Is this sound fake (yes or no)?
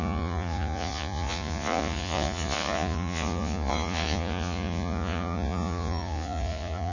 yes